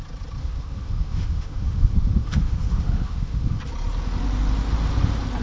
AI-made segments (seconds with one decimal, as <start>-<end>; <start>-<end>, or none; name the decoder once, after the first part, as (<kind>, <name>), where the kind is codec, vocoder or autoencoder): 0.4-3.6 (autoencoder, DAC-VAE)